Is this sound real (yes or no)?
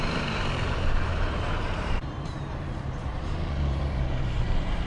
no